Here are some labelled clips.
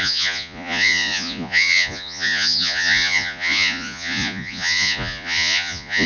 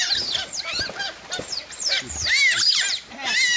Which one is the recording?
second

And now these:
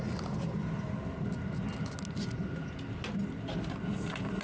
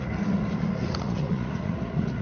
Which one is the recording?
first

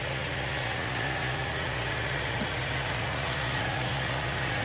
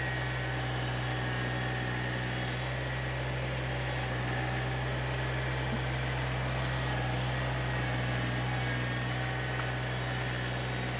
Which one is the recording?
second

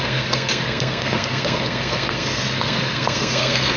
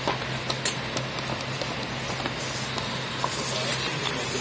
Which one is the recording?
second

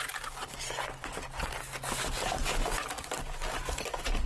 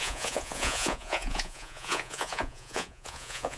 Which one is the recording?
first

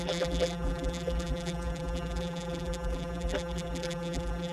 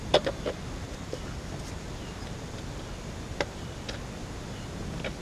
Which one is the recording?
second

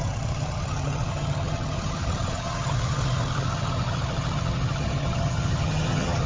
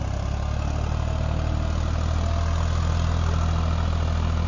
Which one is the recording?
second